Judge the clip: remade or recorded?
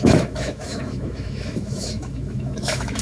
remade